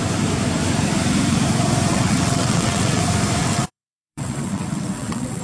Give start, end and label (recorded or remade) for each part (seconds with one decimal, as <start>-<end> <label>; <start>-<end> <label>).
0.0-1.9 recorded; 1.9-3.0 remade; 3.0-3.4 recorded; 3.4-5.4 remade